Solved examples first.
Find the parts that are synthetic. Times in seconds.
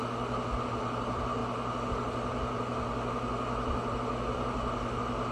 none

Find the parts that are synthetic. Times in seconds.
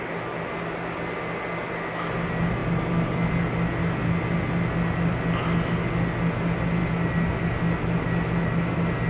none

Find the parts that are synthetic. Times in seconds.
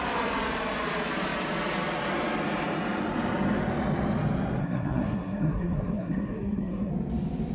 4.6-6.9 (codec, SNAC)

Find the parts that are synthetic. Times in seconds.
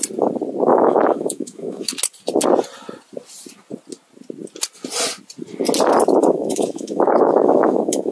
0.7-1.9 (autoencoder, DAC-VAE); 6.2-8.1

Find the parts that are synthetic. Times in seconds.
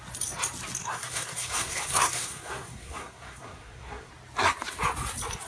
0.8-4.1 (codec, SNAC)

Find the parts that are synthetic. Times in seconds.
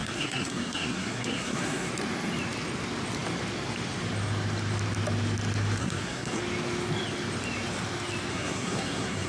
0.0-1.9 (codec, SNAC); 5.8-6.4; 8.3-9.3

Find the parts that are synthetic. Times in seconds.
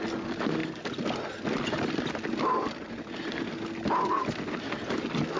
none